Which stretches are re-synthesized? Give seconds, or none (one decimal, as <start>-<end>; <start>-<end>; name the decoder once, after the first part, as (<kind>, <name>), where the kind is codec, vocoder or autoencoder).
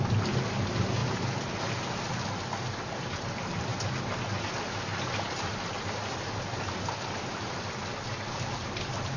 0.0-3.7 (vocoder, BigVGAN v2); 7.3-9.2